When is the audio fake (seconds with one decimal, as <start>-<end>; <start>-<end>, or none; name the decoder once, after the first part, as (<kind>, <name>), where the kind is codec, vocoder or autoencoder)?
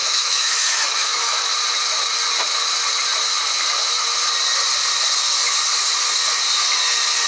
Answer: 0.0-1.4 (autoencoder, DAC-VAE)